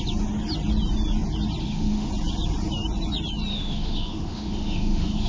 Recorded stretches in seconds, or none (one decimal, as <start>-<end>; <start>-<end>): 0.0-1.6; 2.1-3.5